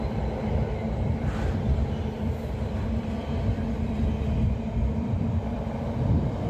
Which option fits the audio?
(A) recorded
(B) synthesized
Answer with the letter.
B